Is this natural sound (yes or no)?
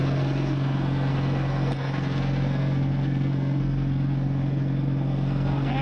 no